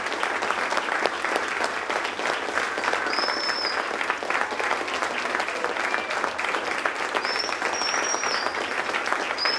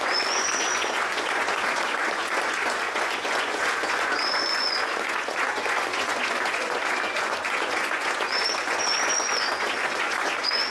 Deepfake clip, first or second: second